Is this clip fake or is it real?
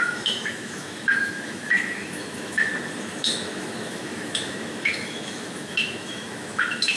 fake